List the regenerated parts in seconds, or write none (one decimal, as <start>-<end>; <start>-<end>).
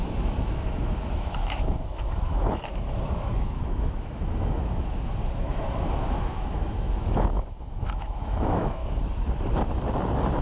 0.0-8.8